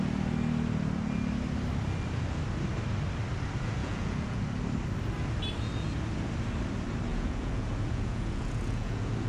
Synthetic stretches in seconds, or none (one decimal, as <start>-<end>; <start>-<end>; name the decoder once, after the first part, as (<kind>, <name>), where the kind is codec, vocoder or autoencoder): 3.8-4.4 (vocoder, Vocos); 7.1-9.3